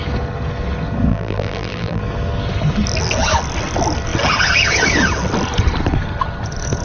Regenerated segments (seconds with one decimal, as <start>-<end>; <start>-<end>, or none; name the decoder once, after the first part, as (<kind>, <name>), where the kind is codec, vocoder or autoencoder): 1.1-2.0 (vocoder, BigVGAN v2)